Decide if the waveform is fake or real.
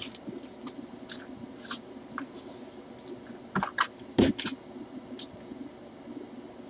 real